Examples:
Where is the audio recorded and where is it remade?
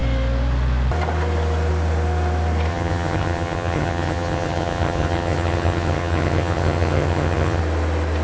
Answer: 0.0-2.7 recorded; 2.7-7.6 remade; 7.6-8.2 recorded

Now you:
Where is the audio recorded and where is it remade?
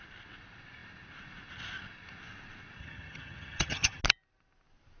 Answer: 0.0-2.8 recorded; 2.8-4.0 remade; 4.0-5.0 recorded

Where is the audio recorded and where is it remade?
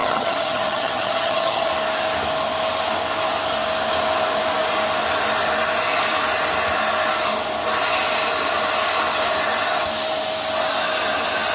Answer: 0.0-1.7 remade; 1.7-11.5 recorded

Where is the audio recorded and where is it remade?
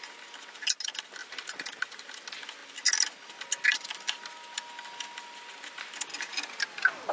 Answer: 0.0-7.1 recorded